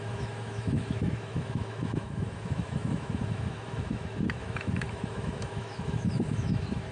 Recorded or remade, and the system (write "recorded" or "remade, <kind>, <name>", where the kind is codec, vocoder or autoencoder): remade, autoencoder, DAC-VAE